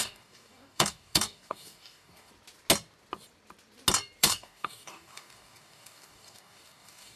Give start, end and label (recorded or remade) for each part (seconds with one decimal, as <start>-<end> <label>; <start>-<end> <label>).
0.0-2.3 remade; 2.3-4.2 recorded; 4.2-7.2 remade